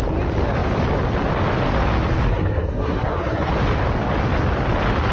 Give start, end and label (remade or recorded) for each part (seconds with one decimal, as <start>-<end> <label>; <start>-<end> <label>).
0.0-2.3 recorded; 2.3-3.5 remade; 3.5-5.1 recorded